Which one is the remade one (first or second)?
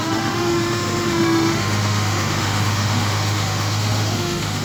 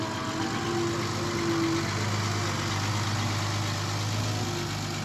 first